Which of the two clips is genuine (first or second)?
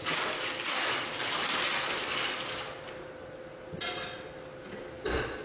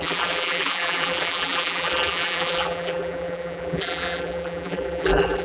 first